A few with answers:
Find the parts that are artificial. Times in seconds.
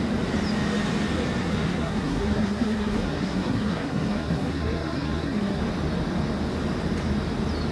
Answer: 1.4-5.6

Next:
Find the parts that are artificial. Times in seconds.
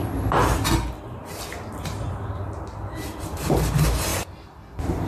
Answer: none